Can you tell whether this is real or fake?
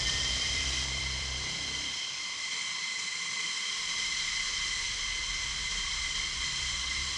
fake